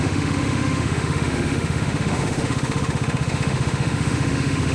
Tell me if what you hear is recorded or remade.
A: remade